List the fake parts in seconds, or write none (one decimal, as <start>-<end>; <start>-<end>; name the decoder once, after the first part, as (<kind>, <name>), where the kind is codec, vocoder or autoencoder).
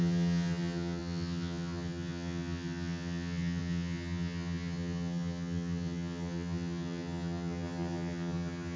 0.0-8.8 (vocoder, HiFi-GAN)